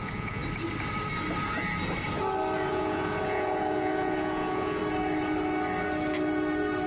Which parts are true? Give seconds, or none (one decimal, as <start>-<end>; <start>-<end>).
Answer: 0.4-2.7; 4.8-6.9